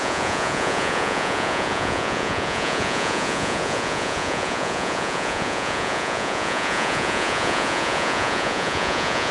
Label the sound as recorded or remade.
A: remade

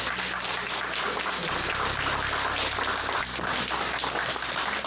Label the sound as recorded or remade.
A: recorded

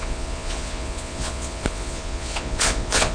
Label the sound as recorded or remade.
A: remade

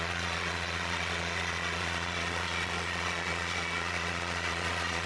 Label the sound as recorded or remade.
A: remade